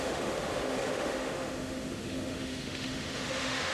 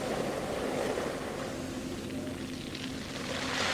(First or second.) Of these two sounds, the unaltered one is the second